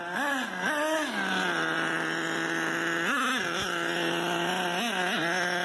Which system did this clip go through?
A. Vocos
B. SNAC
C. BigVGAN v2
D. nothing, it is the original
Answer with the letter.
D